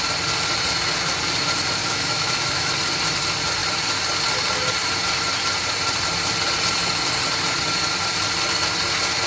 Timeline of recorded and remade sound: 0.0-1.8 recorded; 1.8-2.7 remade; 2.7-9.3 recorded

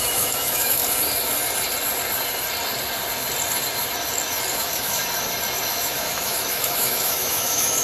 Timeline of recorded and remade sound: 0.0-0.8 remade; 0.8-4.5 recorded; 4.5-5.0 remade; 5.0-5.7 recorded; 5.7-7.8 remade

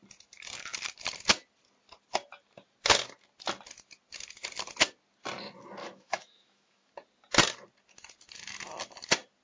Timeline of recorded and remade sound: 0.0-5.8 recorded; 5.8-6.9 remade; 6.9-9.4 recorded

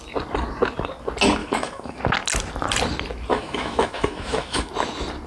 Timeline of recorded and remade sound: 0.0-1.4 recorded; 1.4-2.0 remade; 2.0-3.3 recorded; 3.3-4.7 remade; 4.7-5.3 recorded